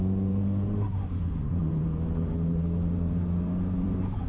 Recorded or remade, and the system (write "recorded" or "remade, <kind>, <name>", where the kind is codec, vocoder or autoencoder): remade, vocoder, BigVGAN v2